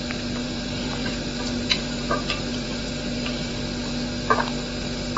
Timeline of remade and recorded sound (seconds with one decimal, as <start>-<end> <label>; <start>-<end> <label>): 0.0-0.4 recorded; 0.4-3.5 remade; 3.5-5.2 recorded